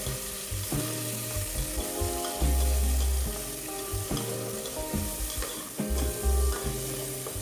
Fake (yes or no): no